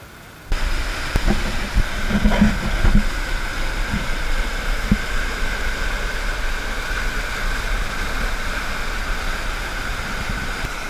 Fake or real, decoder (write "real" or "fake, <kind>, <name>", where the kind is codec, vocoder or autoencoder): real